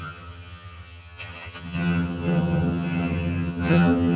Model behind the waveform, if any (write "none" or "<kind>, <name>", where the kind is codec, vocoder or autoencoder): vocoder, HiFi-GAN